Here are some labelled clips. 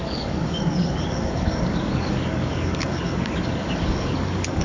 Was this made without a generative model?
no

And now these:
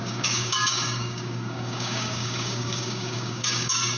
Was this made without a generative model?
no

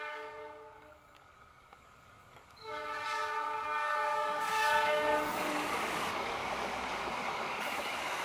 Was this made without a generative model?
no